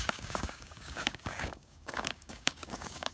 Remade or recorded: remade